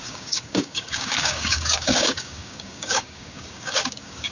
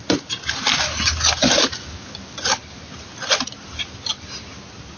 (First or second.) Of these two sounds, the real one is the second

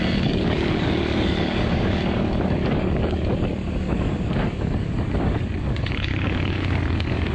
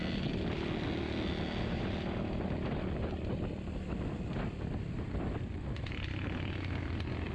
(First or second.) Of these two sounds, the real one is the second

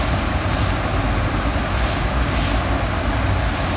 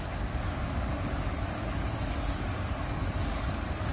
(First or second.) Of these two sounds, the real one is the first